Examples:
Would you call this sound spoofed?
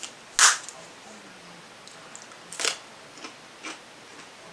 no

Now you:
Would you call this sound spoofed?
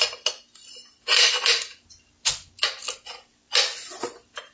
no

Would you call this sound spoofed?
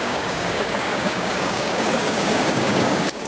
yes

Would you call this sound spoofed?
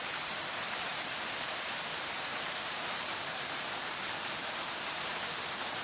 yes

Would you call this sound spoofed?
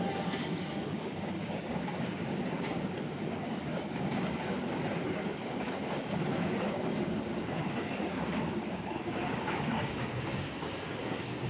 yes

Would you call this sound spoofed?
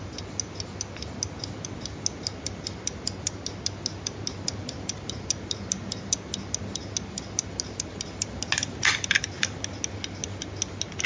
no